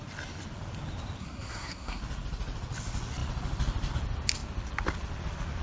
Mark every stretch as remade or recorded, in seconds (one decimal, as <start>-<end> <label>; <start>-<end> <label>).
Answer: 0.0-1.2 recorded; 1.2-2.0 remade; 2.0-5.6 recorded

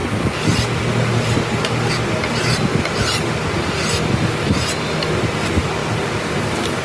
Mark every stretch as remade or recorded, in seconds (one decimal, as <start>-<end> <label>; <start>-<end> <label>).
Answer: 0.0-5.8 recorded; 5.8-6.8 remade

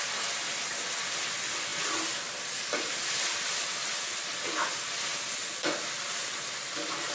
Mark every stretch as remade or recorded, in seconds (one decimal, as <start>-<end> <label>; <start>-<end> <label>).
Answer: 0.0-7.1 recorded